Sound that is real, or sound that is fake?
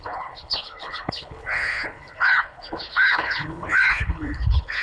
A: fake